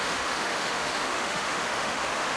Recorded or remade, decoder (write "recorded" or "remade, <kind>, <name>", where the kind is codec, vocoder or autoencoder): remade, autoencoder, DAC-VAE